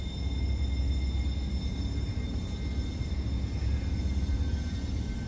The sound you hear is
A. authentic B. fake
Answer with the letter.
A